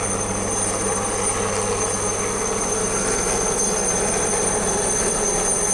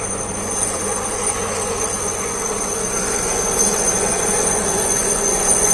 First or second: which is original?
first